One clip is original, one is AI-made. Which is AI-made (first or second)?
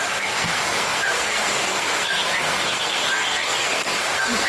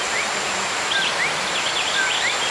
first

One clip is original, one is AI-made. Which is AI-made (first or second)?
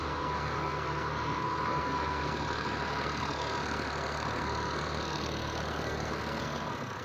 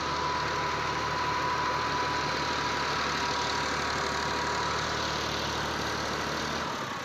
first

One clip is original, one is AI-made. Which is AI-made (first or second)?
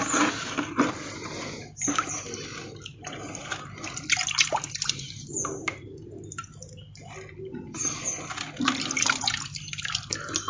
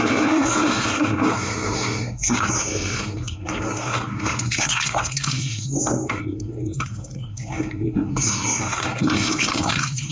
second